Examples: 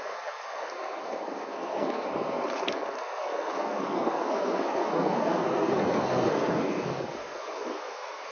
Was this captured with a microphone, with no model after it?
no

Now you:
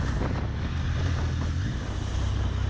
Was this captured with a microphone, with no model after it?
yes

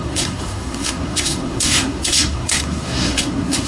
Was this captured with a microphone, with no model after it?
no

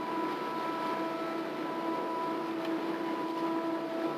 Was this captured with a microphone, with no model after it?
yes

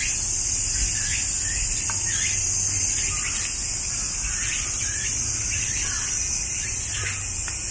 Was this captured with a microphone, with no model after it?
yes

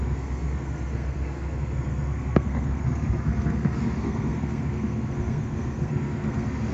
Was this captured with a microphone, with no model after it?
no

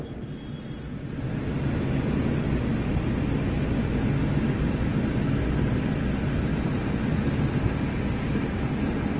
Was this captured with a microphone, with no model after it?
yes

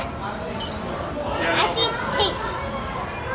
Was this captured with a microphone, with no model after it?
yes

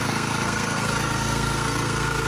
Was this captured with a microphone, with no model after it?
no